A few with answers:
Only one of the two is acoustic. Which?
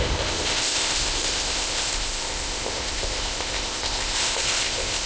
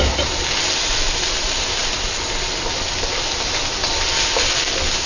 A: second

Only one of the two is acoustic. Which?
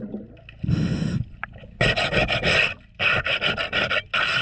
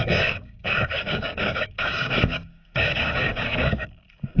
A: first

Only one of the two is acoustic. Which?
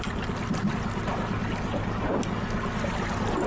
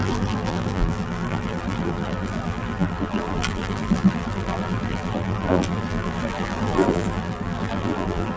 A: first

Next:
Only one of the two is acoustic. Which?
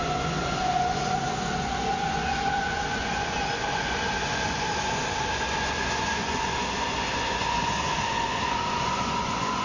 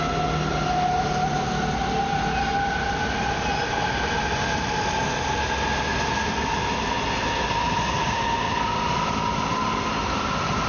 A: second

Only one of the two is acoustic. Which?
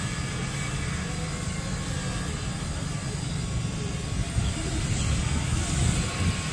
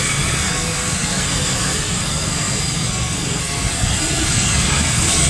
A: first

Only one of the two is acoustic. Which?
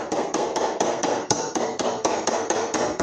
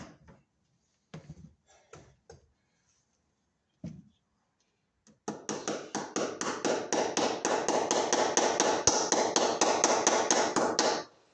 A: second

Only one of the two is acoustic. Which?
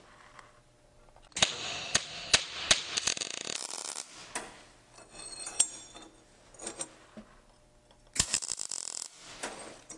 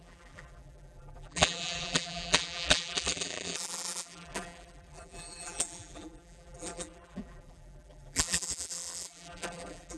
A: first